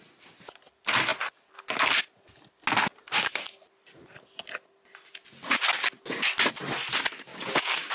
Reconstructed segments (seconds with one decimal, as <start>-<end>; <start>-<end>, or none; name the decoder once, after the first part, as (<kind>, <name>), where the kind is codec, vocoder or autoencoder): 7.3-7.9 (codec, DAC)